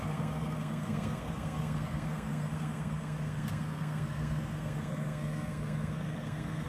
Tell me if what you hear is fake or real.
fake